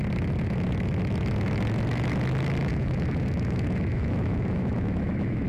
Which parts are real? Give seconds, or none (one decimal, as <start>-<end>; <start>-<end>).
0.0-2.7